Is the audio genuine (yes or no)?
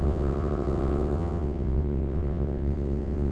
no